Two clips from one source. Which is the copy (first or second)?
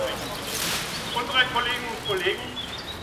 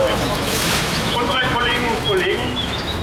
second